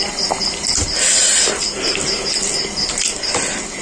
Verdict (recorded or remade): recorded